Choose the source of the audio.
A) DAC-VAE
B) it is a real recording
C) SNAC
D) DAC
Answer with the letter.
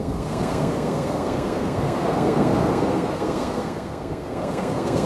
C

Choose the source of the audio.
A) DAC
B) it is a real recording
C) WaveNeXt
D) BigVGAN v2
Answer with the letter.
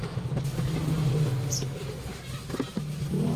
B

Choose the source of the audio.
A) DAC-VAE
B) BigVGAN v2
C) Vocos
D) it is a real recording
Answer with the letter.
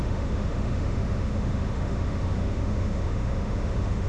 A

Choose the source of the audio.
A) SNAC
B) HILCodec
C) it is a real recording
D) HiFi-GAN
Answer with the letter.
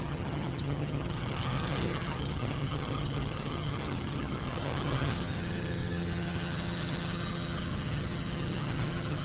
D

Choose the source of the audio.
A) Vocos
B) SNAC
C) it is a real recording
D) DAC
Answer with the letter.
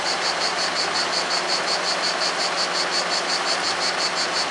C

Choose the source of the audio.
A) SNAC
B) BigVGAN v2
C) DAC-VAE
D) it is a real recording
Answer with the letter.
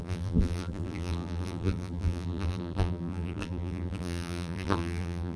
B